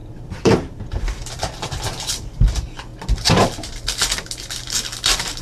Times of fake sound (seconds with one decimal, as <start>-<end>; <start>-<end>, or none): 0.0-2.1